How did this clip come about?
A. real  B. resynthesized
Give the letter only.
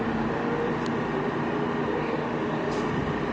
A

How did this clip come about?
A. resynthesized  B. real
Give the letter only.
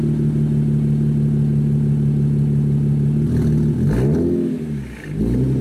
B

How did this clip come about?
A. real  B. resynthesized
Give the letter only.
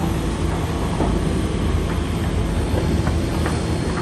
A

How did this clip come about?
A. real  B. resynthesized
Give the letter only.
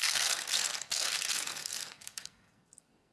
B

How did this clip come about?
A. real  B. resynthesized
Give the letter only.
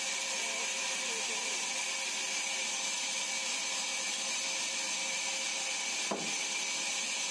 A